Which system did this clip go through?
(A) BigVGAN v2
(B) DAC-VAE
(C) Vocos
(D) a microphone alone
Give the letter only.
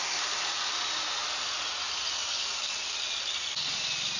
D